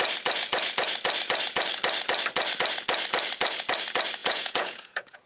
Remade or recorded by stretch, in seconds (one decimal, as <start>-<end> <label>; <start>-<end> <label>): 0.0-4.2 recorded; 4.2-5.3 remade